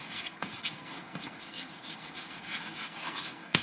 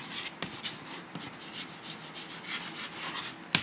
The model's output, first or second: first